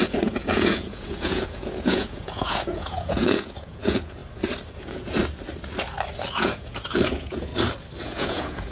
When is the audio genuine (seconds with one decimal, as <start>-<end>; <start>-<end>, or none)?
4.2-4.8; 5.2-6.3; 7.5-8.0